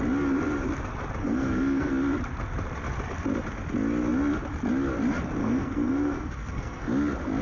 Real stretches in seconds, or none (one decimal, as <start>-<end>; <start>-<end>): 0.0-1.2; 1.9-5.4; 6.9-7.4

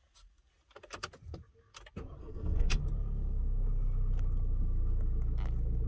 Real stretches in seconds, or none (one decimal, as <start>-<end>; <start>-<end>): 0.0-2.2; 2.8-5.9

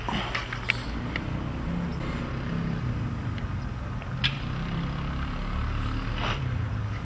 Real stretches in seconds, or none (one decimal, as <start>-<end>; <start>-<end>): 0.0-7.0

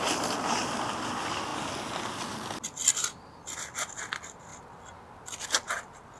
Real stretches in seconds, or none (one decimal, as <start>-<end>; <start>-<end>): 0.0-6.2

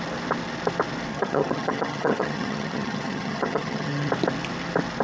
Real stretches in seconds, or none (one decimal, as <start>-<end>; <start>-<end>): 0.0-1.1; 4.1-5.0

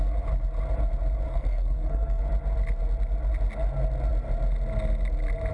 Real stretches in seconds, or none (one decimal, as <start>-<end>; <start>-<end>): 0.0-1.3; 2.2-5.5

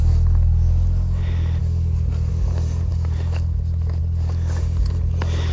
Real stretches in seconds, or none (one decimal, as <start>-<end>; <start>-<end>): 0.0-5.5